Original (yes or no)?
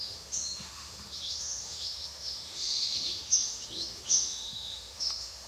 no